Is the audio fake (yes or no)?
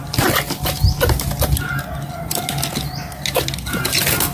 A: no